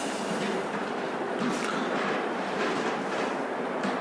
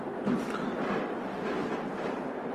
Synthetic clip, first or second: first